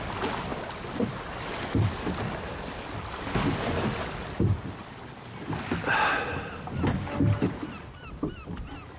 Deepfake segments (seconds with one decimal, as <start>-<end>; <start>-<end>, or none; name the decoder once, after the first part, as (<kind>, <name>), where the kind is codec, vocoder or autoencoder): none